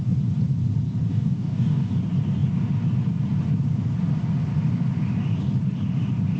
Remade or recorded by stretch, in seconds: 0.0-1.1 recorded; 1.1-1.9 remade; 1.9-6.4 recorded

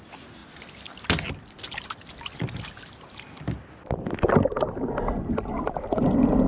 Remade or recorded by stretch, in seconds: 0.0-6.5 recorded

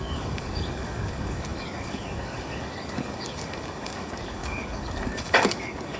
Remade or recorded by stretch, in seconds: 0.0-6.0 remade